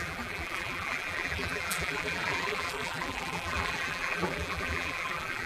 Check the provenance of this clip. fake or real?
fake